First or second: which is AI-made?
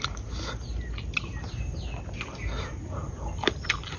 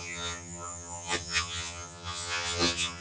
second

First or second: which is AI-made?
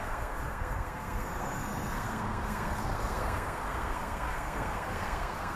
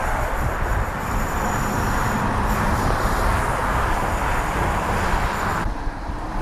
first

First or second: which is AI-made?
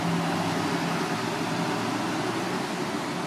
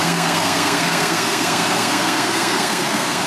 second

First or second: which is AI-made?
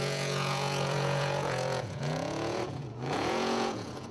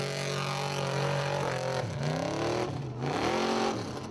first